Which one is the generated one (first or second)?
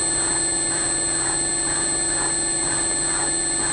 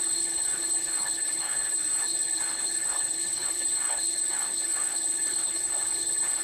second